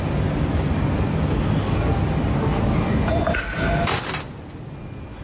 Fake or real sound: real